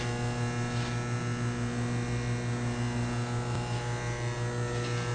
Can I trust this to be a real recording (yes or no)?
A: yes